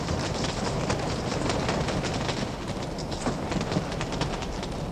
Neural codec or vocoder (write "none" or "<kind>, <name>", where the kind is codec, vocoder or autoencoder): none